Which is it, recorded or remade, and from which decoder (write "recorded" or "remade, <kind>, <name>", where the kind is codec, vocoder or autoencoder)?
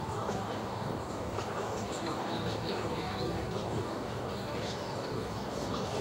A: remade, codec, DAC